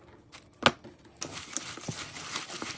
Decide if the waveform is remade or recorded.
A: recorded